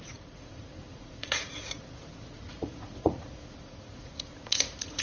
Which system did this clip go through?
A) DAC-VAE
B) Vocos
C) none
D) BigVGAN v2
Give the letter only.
B